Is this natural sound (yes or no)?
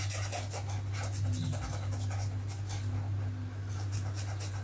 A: yes